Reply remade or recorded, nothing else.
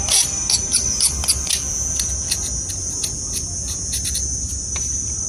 recorded